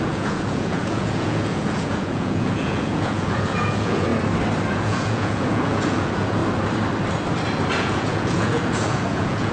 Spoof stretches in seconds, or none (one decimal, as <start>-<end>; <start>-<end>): 0.0-4.1; 4.7-6.4; 7.7-9.5